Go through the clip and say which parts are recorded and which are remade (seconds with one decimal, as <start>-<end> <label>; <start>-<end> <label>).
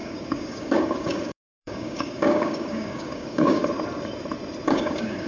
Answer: 0.0-3.6 remade; 3.6-4.7 recorded; 4.7-5.3 remade